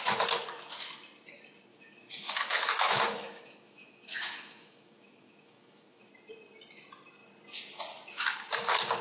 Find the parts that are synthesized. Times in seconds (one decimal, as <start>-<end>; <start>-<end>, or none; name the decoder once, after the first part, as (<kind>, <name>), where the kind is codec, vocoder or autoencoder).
1.7-6.1 (autoencoder, DAC-VAE)